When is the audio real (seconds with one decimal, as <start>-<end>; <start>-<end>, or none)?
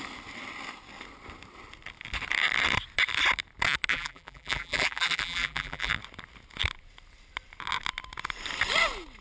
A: 0.0-3.9; 5.9-9.2